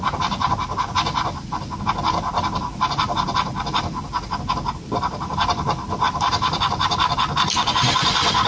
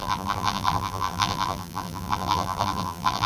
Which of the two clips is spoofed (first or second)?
second